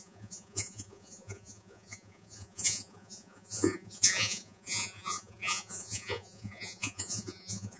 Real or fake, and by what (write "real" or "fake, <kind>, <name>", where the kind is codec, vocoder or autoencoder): fake, vocoder, Vocos